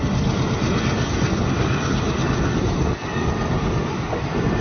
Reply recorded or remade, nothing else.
recorded